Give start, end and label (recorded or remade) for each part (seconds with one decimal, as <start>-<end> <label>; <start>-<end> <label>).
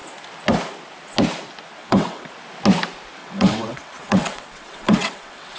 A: 0.0-1.8 recorded; 1.8-2.3 remade; 2.3-3.2 recorded; 3.2-5.6 remade